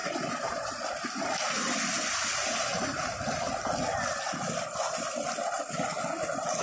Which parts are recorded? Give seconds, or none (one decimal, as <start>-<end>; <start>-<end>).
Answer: 0.7-6.6